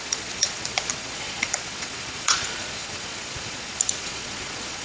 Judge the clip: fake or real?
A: fake